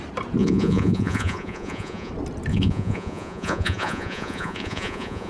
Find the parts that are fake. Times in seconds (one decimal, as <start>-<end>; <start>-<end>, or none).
0.4-2.1; 2.5-5.3